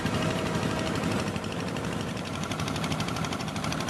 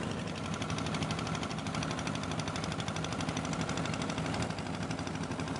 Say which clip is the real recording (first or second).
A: second